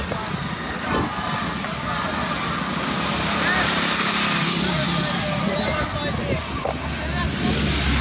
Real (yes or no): yes